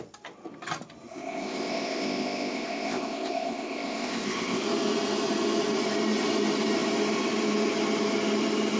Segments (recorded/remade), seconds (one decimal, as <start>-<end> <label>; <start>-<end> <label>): 0.0-1.1 recorded; 1.1-4.6 remade; 4.6-8.8 recorded